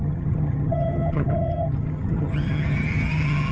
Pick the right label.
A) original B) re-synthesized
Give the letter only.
B